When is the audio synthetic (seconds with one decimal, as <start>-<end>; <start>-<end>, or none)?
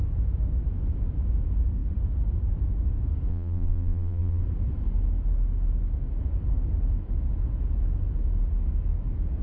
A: 3.3-4.4